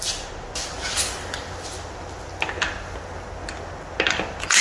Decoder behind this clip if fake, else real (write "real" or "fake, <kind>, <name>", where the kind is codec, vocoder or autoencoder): real